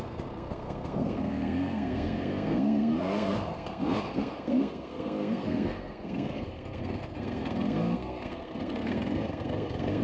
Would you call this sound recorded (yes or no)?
no